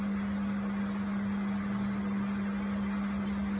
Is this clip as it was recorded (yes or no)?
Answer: yes